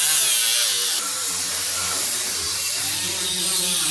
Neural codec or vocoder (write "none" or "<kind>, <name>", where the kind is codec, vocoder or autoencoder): none